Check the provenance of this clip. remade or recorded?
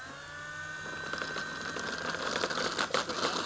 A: recorded